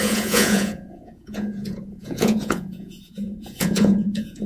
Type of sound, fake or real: fake